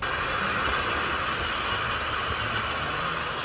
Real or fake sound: real